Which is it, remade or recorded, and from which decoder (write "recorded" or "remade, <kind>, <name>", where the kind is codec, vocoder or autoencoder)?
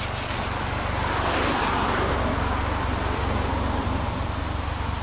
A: recorded